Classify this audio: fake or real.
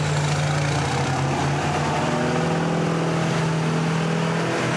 real